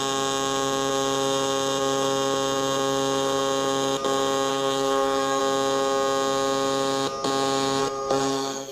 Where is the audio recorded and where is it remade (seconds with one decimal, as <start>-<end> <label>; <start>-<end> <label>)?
0.0-4.5 recorded; 4.5-5.4 remade; 5.4-7.8 recorded; 7.8-8.7 remade